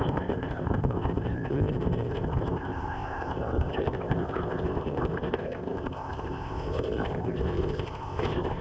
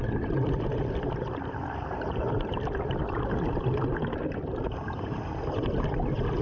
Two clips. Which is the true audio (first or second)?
second